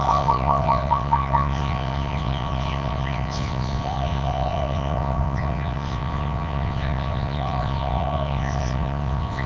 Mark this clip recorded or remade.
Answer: remade